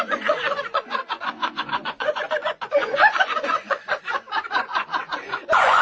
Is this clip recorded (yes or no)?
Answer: no